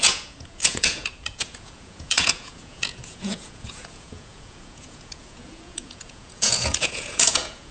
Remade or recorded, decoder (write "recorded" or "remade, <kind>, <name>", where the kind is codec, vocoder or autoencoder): remade, vocoder, Vocos